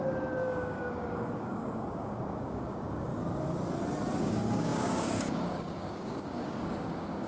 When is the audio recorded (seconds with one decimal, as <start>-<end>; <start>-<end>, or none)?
3.1-4.2